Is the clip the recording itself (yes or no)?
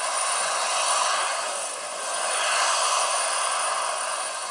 no